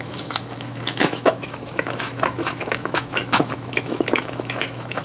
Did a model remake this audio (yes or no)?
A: yes